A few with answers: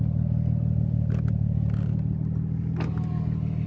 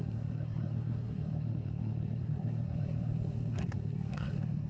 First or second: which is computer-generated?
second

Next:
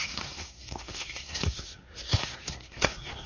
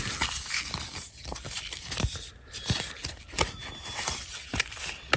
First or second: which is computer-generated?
first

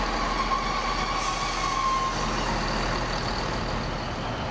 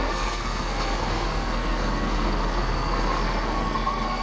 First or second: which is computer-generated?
second